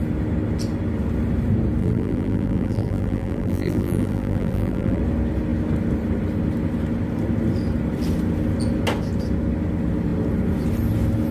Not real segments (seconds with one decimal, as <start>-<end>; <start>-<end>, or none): 1.8-5.0